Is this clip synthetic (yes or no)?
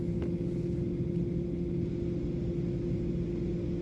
no